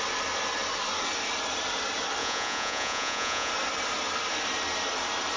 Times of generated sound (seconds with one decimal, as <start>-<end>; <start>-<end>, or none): 2.2-3.5